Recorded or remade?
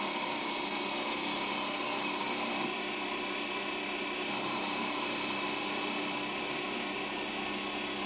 remade